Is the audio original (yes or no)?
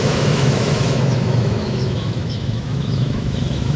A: no